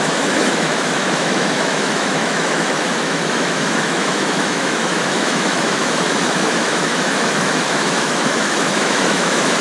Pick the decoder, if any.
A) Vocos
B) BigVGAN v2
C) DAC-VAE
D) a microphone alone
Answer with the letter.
C